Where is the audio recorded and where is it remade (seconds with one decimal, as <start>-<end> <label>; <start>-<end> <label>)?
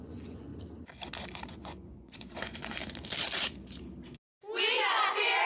0.0-0.5 remade; 0.5-1.5 recorded; 1.5-2.8 remade; 2.8-4.9 recorded; 4.9-5.5 remade